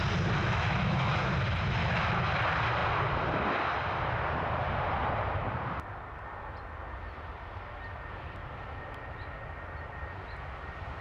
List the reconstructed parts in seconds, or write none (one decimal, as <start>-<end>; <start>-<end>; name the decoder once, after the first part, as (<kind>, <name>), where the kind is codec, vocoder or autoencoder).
0.4-1.3 (autoencoder, DAC-VAE); 1.8-2.3